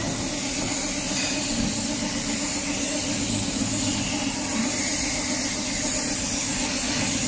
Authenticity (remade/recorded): recorded